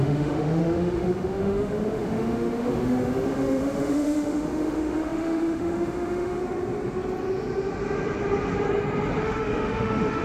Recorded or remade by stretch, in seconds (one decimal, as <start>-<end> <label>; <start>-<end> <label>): 0.0-6.4 remade; 6.4-9.2 recorded; 9.2-10.2 remade